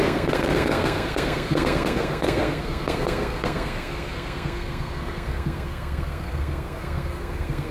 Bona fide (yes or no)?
no